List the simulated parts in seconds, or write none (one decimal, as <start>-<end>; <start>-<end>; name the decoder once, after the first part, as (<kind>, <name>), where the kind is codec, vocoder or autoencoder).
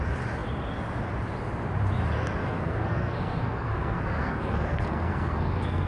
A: 2.4-5.9 (codec, SNAC)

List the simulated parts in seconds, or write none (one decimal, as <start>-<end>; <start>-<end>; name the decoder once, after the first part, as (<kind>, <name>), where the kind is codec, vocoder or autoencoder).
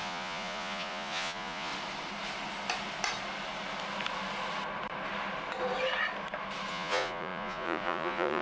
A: 0.0-1.7 (vocoder, Vocos); 6.7-8.4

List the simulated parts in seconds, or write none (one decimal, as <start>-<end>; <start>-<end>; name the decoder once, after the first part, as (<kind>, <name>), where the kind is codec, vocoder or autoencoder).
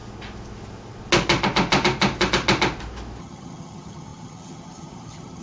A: 3.2-5.4 (vocoder, HiFi-GAN)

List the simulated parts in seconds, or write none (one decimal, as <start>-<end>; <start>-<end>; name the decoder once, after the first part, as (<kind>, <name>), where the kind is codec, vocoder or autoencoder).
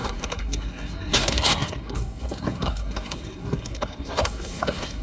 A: 0.0-5.0 (codec, SNAC)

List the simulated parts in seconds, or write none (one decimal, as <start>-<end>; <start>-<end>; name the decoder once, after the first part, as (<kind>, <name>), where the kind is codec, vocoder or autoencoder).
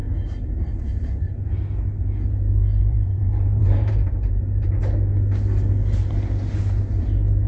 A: 2.8-4.8 (vocoder, BigVGAN v2)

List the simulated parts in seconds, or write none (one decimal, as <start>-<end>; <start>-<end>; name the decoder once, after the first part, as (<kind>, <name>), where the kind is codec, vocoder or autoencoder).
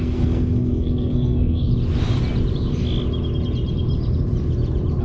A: 0.0-1.7 (codec, SNAC)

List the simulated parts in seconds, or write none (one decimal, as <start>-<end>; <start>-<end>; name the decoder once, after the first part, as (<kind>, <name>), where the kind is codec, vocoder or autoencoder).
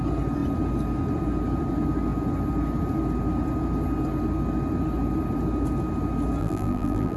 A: 6.4-7.2 (vocoder, BigVGAN v2)